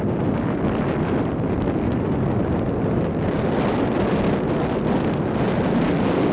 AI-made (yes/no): no